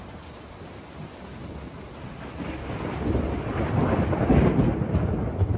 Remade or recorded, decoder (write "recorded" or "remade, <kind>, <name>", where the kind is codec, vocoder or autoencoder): recorded